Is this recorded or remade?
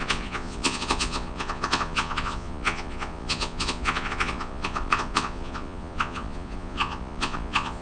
remade